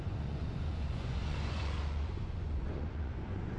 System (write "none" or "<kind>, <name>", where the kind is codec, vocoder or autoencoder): vocoder, Vocos